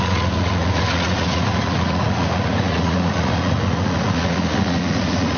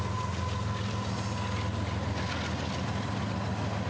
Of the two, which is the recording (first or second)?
second